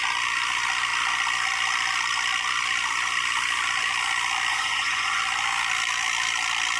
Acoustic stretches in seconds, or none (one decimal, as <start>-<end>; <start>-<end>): 0.0-4.5; 5.2-6.8